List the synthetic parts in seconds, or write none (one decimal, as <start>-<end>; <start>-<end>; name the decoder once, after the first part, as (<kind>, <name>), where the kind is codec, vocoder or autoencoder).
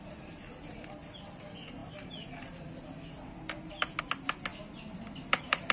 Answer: none